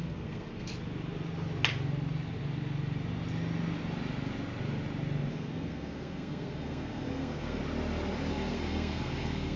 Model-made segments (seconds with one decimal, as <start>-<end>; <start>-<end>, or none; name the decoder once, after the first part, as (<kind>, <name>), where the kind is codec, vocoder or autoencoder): 0.0-0.7 (codec, SNAC); 5.3-7.6; 8.3-9.6